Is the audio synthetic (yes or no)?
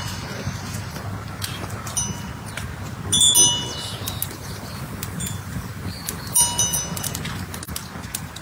no